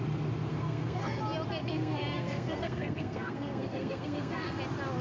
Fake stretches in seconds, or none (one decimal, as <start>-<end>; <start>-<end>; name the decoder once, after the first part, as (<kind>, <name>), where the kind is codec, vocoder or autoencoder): 0.5-1.2 (codec, SNAC); 1.6-4.6